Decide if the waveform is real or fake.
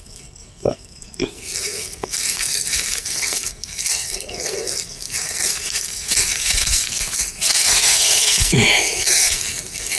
fake